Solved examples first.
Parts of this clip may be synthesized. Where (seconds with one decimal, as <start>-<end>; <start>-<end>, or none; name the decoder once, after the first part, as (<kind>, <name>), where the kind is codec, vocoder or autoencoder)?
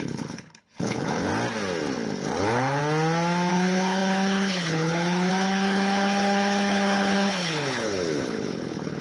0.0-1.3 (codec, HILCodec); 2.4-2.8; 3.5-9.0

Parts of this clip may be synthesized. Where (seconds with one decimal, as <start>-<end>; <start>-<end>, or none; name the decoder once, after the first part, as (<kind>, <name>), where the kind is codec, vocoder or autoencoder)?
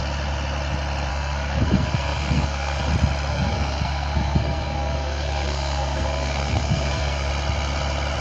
1.1-2.9 (codec, SNAC); 3.3-7.3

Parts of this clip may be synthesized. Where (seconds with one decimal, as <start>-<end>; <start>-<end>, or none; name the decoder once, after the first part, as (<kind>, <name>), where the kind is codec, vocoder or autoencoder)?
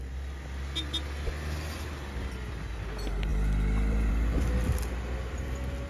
none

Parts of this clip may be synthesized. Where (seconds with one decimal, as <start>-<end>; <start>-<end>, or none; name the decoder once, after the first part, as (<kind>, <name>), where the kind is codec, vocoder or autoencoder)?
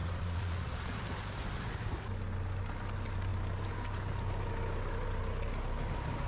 0.0-0.9 (vocoder, Vocos)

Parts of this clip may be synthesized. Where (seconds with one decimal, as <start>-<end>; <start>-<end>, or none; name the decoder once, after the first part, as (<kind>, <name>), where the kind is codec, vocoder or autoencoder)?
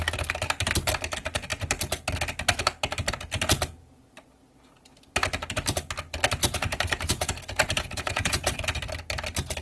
6.4-8.6 (vocoder, Vocos)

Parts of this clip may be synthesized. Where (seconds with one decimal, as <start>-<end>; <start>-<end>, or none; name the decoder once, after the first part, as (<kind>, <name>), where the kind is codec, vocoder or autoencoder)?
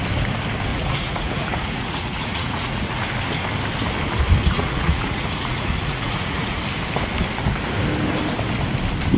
0.7-3.0 (vocoder, Vocos); 4.4-6.6